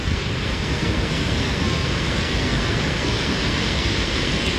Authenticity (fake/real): fake